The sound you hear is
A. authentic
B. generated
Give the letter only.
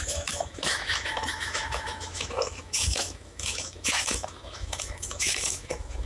B